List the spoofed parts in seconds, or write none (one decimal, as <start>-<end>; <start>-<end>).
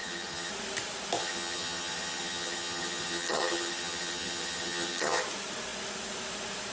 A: 0.0-0.5; 1.2-5.2